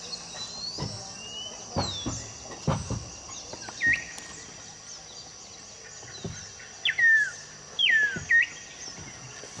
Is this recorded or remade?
recorded